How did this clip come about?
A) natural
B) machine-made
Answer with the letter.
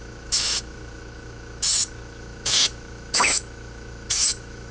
B